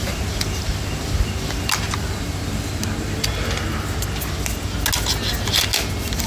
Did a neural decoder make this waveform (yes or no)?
no